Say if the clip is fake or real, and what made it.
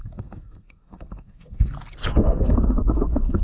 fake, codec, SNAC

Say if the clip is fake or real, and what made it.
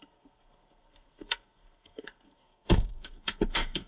fake, codec, SNAC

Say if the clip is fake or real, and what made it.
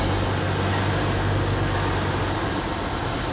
real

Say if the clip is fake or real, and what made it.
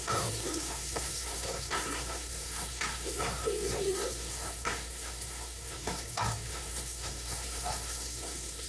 fake, codec, SNAC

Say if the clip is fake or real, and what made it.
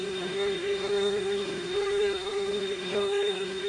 fake, codec, SNAC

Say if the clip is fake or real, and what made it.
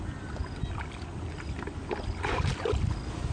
real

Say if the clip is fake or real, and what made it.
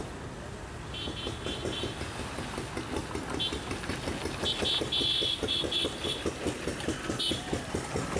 real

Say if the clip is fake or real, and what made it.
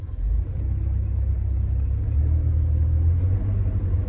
real